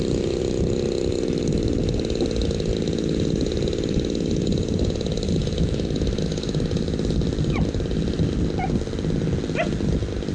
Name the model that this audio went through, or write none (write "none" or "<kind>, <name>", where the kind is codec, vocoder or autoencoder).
none